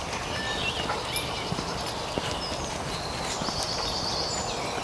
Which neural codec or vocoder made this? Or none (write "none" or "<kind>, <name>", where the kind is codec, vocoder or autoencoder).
none